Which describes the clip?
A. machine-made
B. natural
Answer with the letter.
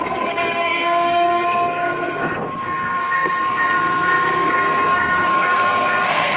A